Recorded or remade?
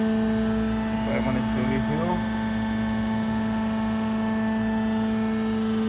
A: recorded